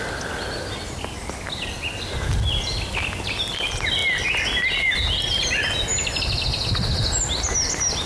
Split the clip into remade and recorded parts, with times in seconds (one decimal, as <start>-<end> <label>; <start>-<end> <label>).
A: 0.0-8.1 recorded